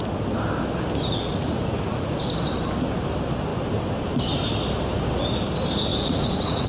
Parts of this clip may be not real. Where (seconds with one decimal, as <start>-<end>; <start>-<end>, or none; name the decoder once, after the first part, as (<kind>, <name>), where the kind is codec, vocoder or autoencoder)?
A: 1.3-2.2 (vocoder, Vocos); 5.9-6.7